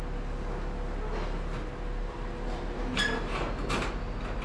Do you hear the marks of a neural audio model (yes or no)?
no